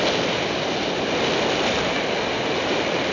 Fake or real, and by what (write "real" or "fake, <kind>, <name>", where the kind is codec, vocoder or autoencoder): real